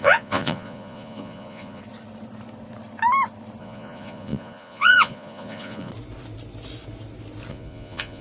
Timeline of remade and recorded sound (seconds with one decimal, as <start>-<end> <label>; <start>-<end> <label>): 0.0-1.8 remade; 1.8-3.6 recorded; 3.6-5.9 remade; 5.9-7.5 recorded; 7.5-8.2 remade